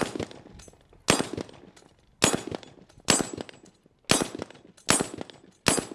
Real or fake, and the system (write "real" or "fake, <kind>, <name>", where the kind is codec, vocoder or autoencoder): real